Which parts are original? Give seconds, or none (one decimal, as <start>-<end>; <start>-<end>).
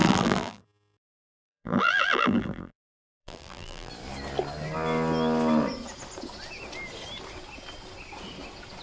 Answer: 0.6-1.3; 3.9-8.8